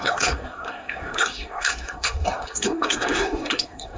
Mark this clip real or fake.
fake